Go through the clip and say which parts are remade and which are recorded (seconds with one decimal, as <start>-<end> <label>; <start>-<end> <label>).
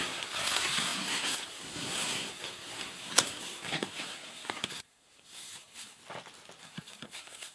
0.0-6.0 remade; 6.0-6.6 recorded; 6.6-7.5 remade